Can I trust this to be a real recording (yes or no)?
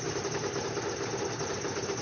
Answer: yes